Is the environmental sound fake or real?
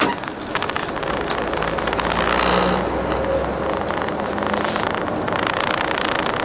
real